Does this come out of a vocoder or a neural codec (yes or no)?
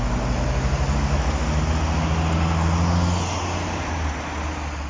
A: no